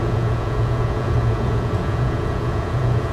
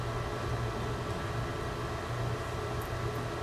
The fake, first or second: first